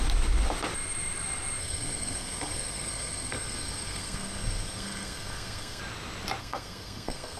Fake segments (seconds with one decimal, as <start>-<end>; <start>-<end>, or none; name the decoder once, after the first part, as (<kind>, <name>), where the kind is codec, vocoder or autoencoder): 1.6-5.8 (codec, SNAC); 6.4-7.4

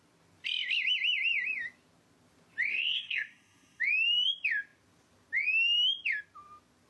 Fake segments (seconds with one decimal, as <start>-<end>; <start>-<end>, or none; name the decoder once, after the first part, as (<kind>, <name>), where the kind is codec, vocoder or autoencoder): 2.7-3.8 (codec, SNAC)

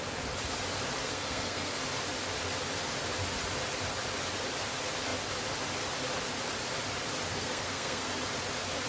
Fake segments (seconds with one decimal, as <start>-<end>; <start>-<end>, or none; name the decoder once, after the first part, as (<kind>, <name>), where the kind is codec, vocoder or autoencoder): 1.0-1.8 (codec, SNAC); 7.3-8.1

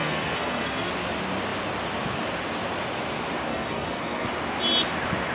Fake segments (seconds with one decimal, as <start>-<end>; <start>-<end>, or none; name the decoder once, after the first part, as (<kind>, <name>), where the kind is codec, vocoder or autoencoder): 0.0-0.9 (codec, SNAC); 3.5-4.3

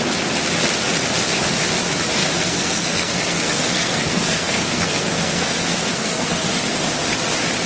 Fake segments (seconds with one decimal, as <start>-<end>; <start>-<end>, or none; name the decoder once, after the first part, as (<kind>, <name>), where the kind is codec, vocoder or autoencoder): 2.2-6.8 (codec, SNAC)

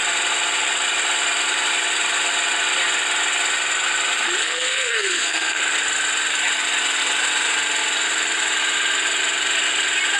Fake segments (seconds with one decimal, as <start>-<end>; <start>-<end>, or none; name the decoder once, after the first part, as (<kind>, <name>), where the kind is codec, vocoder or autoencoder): 4.4-5.6 (codec, SNAC)

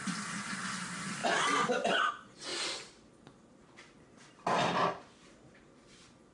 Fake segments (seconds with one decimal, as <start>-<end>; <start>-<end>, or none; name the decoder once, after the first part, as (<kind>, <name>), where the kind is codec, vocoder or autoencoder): none

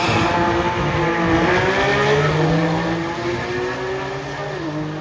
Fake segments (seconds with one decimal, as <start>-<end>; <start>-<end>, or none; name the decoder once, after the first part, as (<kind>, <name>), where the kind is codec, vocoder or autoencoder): none